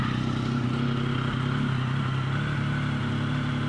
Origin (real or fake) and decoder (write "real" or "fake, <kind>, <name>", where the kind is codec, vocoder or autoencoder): real